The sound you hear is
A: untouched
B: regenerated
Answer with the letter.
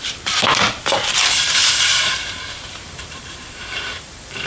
B